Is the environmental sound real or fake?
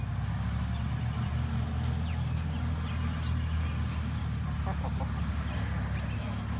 real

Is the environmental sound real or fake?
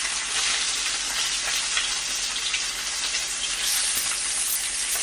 real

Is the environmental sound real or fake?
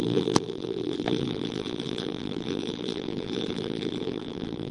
fake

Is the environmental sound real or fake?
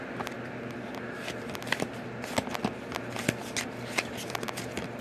real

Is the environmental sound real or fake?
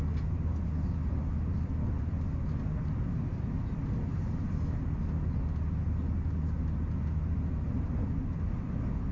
real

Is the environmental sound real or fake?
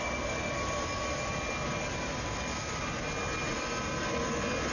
real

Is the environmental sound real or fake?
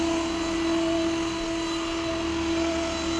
real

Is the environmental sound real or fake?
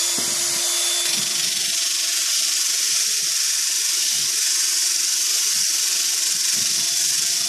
real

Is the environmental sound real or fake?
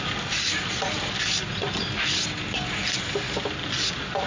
real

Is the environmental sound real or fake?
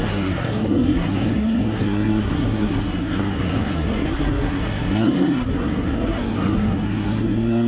fake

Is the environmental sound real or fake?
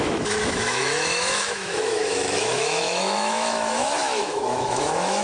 fake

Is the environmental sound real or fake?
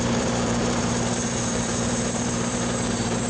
fake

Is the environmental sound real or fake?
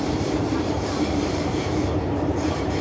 fake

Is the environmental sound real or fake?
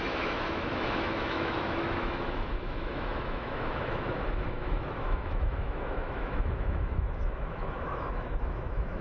fake